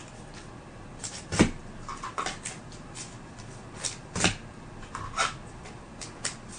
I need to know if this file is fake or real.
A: real